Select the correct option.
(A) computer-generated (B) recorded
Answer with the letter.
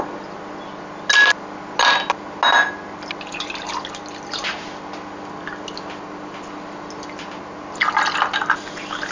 B